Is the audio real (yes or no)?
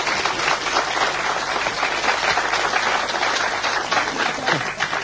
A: yes